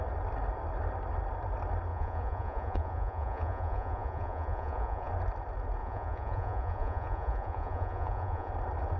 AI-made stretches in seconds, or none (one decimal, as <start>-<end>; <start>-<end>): 1.9-5.1; 5.8-8.5